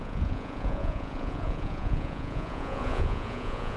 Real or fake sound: fake